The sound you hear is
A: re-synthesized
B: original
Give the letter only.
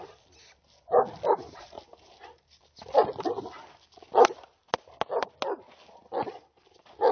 B